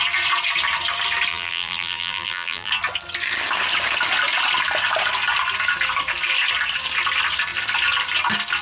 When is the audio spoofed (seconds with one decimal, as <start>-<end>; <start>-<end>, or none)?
1.3-2.7